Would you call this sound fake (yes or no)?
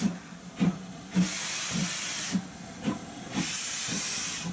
no